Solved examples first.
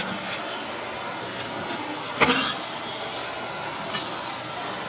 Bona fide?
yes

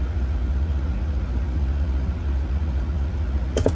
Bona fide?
no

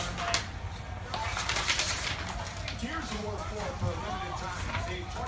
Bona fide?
yes